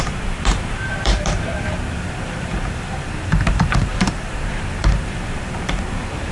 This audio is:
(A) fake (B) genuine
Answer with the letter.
A